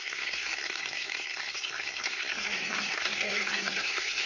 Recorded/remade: remade